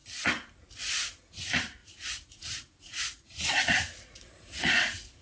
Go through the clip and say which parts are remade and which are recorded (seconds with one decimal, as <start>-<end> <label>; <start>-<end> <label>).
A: 0.0-1.3 recorded; 1.3-5.2 remade